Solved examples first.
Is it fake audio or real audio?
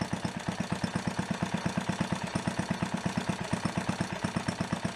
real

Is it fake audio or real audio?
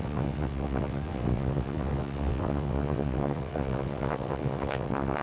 fake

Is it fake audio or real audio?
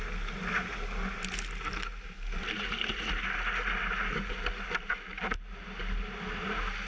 real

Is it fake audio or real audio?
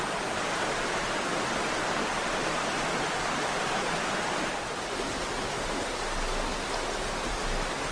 real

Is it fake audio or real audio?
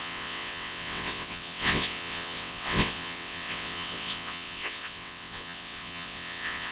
fake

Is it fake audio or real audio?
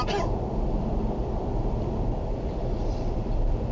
fake